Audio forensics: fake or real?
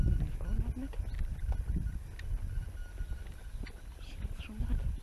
real